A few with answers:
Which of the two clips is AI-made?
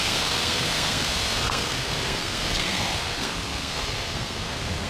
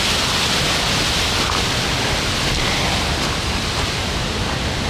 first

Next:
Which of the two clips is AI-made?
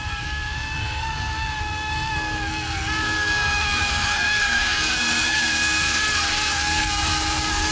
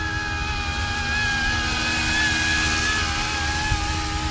first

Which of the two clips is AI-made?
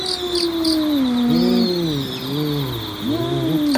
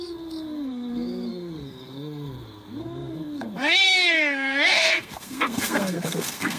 second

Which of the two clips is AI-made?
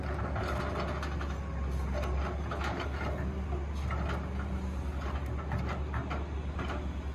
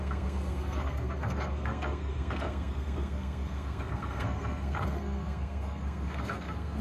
second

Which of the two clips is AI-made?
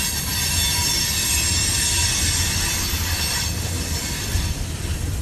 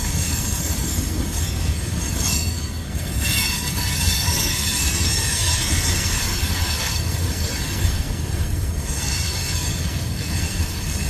second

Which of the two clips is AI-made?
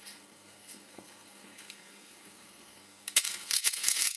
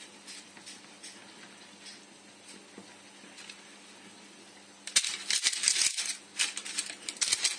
first